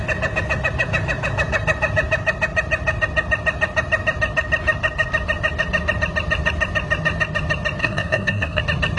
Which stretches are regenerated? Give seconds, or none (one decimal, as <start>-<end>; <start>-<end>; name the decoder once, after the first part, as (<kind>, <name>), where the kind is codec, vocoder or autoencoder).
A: 7.8-8.6 (codec, SNAC)